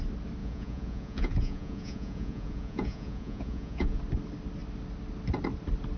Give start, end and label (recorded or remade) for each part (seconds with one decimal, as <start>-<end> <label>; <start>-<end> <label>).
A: 0.0-0.4 recorded; 0.4-4.0 remade; 4.0-6.0 recorded